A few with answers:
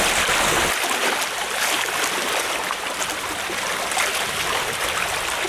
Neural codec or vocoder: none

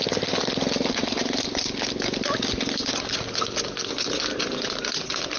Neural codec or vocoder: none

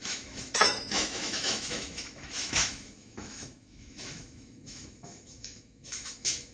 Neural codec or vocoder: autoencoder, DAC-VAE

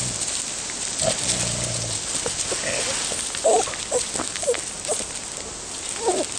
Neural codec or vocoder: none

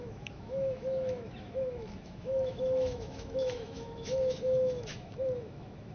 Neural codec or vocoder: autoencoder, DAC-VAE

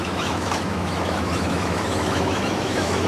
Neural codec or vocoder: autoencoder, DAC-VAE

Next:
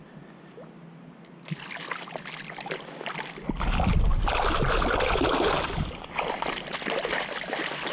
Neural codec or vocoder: none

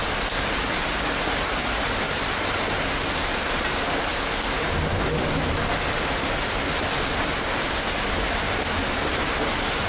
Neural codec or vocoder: none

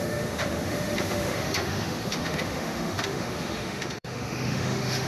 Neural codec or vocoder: autoencoder, DAC-VAE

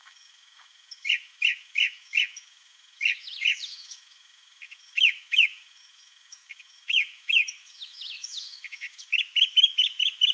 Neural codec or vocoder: autoencoder, DAC-VAE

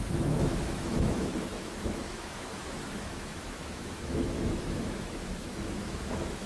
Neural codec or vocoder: autoencoder, DAC-VAE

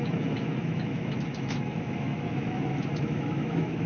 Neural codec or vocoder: autoencoder, DAC-VAE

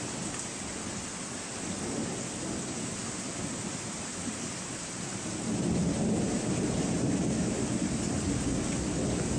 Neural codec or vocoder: none